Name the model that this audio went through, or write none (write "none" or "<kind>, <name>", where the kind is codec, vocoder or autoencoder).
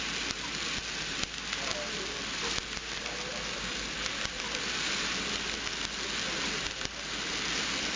none